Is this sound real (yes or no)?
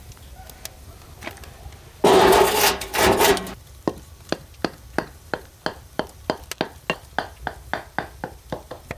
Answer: yes